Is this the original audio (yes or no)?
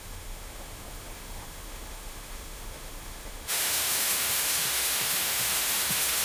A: no